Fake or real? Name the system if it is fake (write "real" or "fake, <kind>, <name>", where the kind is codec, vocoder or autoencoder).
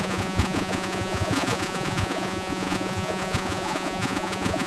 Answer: fake, vocoder, Vocos